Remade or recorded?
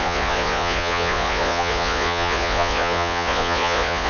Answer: remade